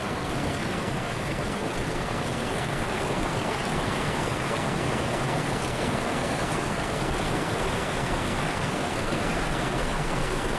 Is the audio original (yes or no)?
no